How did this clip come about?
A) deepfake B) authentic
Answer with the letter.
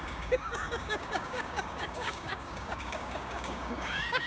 A